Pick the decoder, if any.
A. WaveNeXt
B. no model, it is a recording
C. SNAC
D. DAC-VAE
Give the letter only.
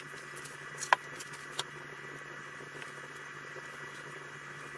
B